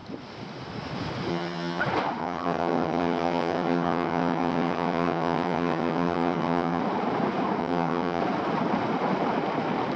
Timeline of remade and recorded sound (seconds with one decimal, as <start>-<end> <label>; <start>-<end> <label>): 0.0-1.3 recorded; 1.3-1.8 remade; 1.8-2.2 recorded; 2.2-6.8 remade; 6.8-7.6 recorded; 7.6-8.2 remade; 8.2-10.0 recorded